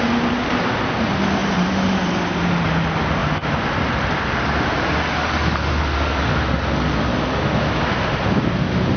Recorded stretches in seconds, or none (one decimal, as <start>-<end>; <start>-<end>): 0.0-9.0